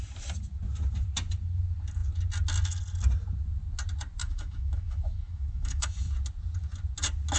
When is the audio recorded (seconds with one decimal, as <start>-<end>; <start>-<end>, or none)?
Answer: 0.0-4.2; 6.1-7.4